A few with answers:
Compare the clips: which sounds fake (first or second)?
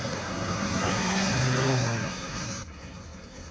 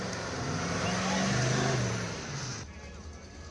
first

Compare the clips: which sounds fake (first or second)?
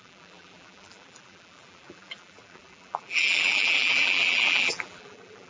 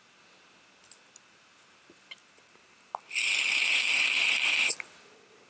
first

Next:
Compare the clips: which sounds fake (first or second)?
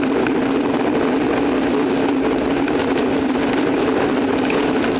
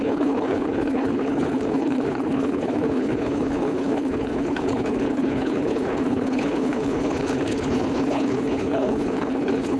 second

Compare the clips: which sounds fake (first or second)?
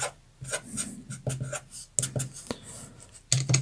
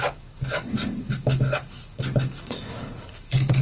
second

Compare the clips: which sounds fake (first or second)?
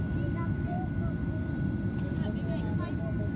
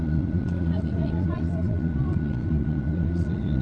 second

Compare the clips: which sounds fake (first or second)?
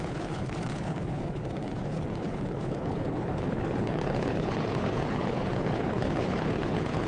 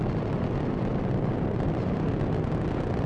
first